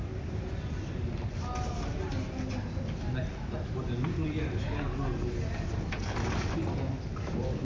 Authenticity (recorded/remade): recorded